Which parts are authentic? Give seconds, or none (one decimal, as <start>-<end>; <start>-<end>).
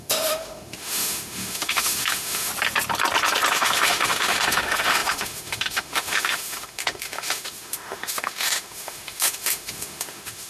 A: 2.5-3.5